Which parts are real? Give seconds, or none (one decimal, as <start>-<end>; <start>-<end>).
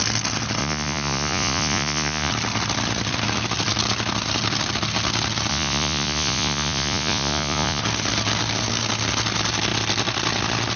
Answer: 0.0-0.6; 2.3-5.5; 7.8-10.8